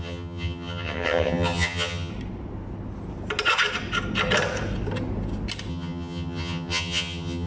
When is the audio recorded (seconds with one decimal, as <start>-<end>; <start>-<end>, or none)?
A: 2.1-5.7